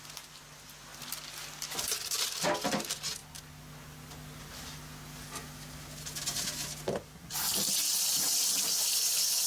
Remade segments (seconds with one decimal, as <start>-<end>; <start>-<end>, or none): none